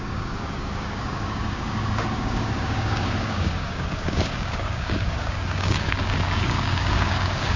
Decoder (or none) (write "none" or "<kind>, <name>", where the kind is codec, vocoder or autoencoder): codec, DAC